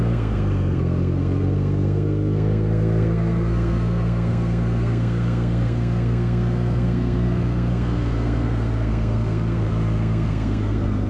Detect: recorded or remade remade